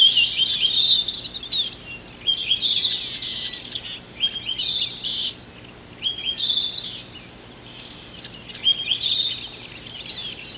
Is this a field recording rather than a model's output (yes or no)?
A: yes